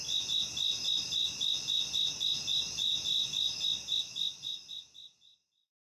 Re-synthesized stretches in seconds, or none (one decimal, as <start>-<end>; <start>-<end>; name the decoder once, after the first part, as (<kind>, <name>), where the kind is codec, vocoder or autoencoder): none